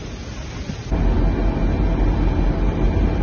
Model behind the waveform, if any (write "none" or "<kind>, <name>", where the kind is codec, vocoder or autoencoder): none